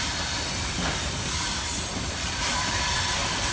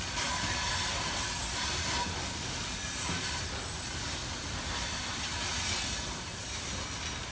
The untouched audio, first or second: second